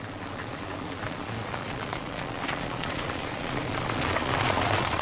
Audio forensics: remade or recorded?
remade